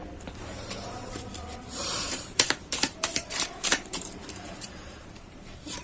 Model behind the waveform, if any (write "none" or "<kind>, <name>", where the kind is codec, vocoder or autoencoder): vocoder, BigVGAN v2